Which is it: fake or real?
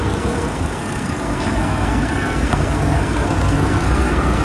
fake